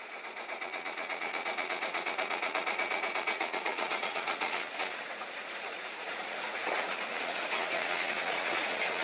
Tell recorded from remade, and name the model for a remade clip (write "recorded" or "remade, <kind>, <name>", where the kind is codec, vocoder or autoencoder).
remade, vocoder, Vocos